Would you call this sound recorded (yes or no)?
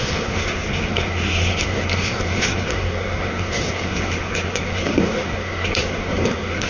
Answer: no